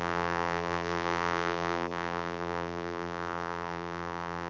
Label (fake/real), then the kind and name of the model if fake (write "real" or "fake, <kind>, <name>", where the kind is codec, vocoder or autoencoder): fake, vocoder, BigVGAN v2